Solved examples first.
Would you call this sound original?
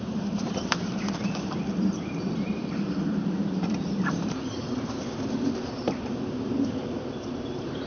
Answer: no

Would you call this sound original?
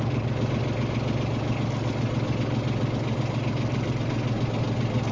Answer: yes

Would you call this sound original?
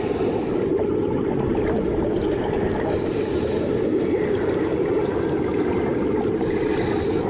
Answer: yes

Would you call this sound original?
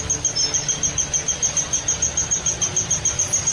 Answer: yes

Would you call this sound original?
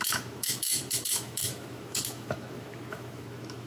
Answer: no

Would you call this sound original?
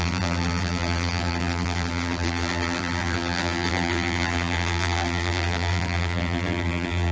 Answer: no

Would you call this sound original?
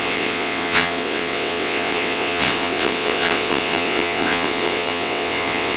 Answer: no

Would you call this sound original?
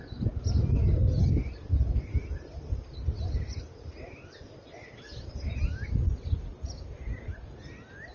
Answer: yes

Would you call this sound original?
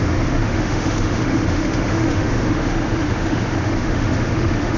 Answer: no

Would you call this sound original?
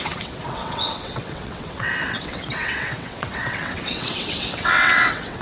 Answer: no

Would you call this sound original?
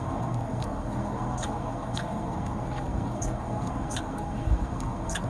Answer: no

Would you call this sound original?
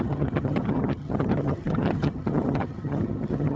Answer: no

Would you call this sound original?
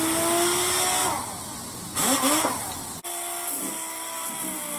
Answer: yes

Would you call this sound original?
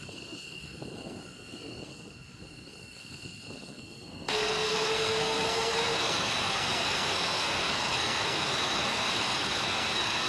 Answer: no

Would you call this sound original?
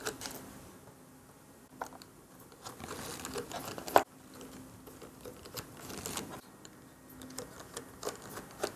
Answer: yes